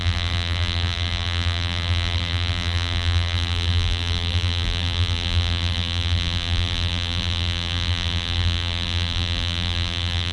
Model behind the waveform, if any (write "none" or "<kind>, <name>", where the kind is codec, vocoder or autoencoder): vocoder, BigVGAN v2